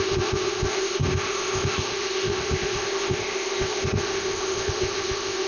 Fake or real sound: fake